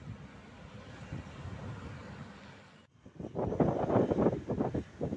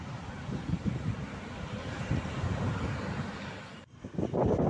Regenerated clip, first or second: second